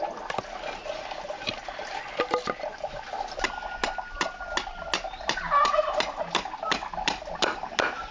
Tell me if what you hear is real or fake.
real